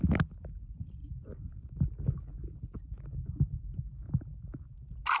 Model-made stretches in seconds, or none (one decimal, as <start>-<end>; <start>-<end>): 4.0-4.8